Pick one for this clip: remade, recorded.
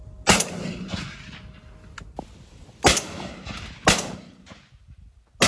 recorded